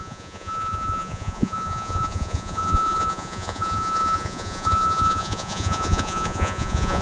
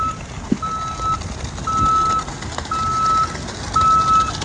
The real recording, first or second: second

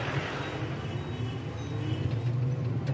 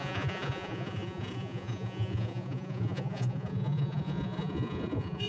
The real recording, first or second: first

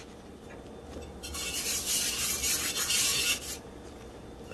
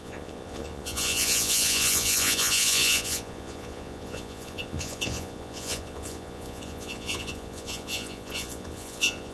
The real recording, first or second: first